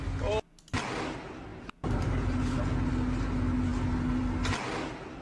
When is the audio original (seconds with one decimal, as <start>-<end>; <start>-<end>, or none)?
0.0-1.5; 2.6-5.2